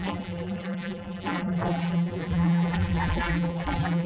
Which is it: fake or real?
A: fake